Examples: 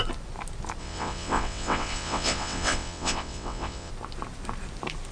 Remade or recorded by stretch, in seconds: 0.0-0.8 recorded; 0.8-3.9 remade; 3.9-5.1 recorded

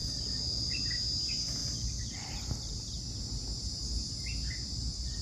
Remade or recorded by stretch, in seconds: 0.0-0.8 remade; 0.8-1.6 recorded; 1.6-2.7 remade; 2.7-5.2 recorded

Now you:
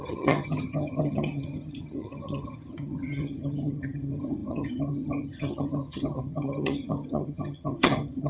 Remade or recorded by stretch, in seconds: 0.0-8.3 remade

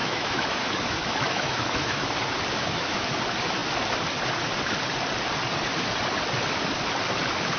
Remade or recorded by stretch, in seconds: 0.0-2.0 remade; 2.0-2.5 recorded; 2.5-3.0 remade; 3.0-7.6 recorded